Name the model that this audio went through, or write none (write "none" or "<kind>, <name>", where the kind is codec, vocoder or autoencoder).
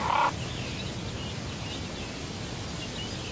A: none